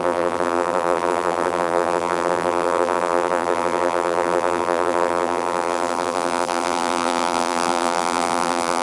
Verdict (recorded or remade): remade